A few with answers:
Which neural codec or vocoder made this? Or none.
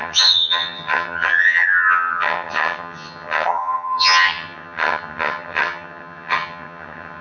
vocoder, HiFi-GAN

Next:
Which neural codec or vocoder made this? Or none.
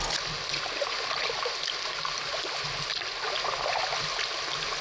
none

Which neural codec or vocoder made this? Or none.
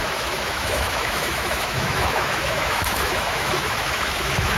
autoencoder, DAC-VAE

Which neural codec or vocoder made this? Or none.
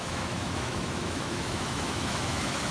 autoencoder, DAC-VAE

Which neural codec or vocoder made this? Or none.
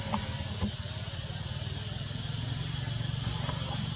none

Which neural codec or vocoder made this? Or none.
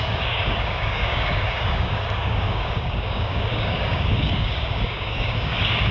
codec, DAC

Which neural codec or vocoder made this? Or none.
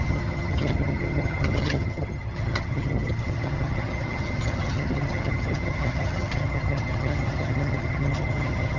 vocoder, HiFi-GAN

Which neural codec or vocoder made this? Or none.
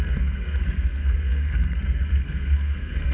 codec, SNAC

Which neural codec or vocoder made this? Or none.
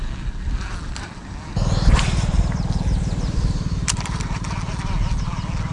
none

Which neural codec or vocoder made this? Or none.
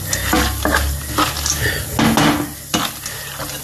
none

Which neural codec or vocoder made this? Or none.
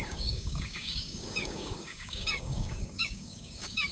codec, DAC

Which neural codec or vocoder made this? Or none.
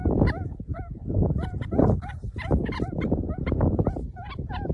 vocoder, BigVGAN v2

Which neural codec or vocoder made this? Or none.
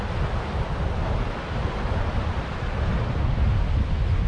none